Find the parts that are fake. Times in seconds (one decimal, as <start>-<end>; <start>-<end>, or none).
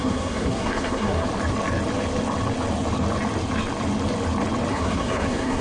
0.0-1.3; 4.7-5.6